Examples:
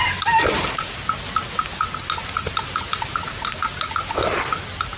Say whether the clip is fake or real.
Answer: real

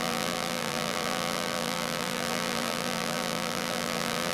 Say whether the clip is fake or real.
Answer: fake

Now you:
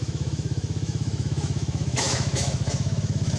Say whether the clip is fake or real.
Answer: fake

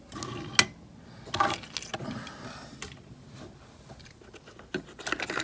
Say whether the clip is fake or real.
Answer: real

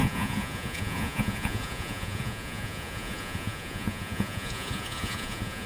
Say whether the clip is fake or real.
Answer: fake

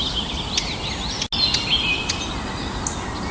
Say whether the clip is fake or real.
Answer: real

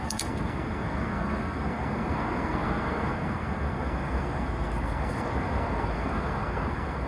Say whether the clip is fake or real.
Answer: fake